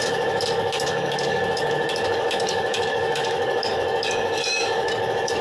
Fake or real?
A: fake